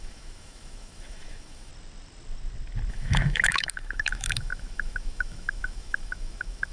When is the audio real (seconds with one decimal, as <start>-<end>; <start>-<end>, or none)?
1.7-2.9